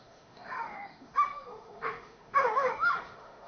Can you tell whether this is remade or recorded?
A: remade